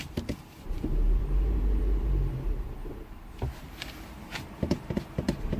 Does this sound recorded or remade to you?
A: remade